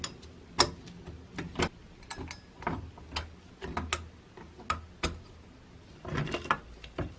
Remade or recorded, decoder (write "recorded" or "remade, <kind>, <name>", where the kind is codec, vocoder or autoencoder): recorded